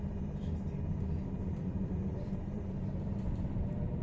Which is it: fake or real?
fake